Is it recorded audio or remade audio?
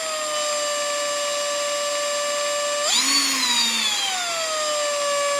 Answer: recorded